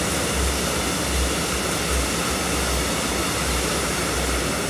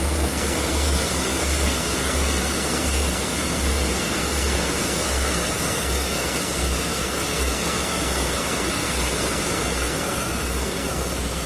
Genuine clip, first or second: first